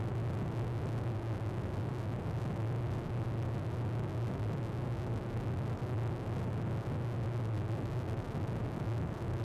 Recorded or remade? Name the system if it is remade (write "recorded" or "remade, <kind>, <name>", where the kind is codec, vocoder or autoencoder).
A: recorded